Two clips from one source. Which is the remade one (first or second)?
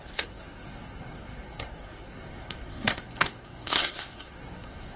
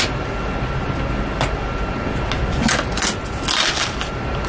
first